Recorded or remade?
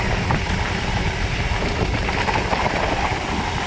recorded